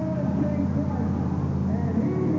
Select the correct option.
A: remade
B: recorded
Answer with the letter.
B